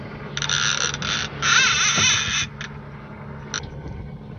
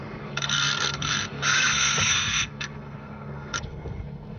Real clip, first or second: first